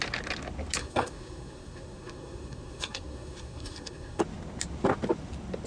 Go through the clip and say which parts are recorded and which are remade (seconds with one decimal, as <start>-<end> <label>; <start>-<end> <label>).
0.0-0.8 recorded; 0.8-4.2 remade; 4.2-5.7 recorded